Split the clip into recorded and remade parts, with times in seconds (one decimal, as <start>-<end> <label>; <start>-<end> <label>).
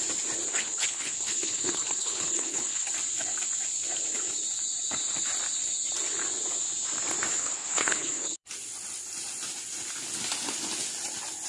0.0-0.5 recorded; 0.5-2.9 remade; 2.9-7.3 recorded; 7.3-8.5 remade; 8.5-11.5 recorded